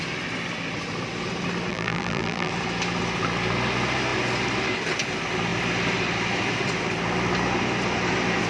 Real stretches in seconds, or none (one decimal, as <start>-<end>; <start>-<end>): 0.0-1.7; 2.5-8.5